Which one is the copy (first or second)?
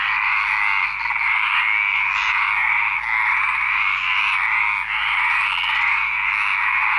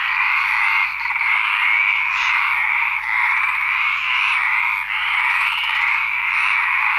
second